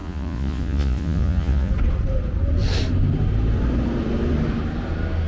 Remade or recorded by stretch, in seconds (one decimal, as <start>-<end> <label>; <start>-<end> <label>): 0.0-1.7 remade; 1.7-5.3 recorded